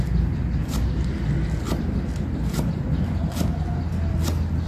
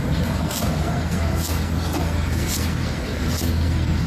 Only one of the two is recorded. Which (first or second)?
first